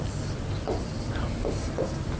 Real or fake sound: real